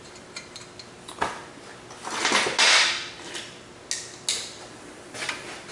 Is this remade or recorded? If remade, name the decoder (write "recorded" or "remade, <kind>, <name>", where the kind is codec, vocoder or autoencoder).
recorded